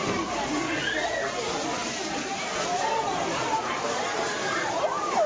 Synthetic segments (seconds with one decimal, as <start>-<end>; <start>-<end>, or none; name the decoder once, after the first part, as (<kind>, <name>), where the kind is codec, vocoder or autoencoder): 1.8-5.3 (vocoder, BigVGAN v2)